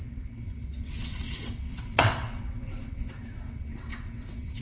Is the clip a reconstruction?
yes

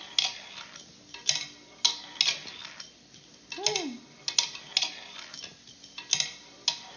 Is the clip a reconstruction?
no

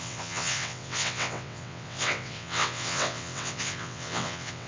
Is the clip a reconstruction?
yes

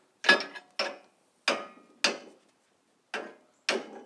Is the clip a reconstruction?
no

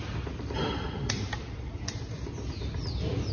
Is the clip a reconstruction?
no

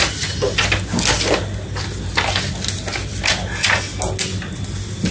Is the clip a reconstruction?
no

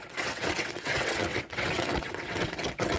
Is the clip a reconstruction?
yes